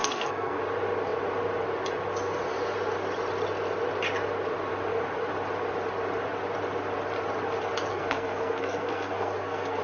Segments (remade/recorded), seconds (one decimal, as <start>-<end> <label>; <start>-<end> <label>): 0.0-0.6 remade; 0.6-7.9 recorded; 7.9-9.8 remade